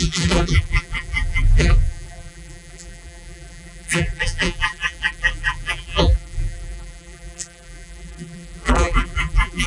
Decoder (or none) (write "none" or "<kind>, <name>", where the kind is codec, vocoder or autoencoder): vocoder, BigVGAN v2